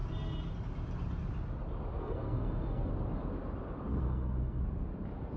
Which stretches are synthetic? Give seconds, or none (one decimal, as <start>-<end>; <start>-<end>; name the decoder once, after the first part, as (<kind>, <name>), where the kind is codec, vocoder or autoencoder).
2.0-2.9 (codec, SNAC); 3.9-4.6

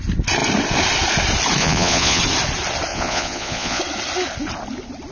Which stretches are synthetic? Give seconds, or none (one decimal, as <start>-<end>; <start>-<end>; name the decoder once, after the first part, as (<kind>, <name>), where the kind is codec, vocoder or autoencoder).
1.6-2.2 (vocoder, Vocos); 2.9-3.8